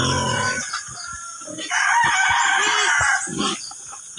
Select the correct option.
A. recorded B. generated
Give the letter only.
A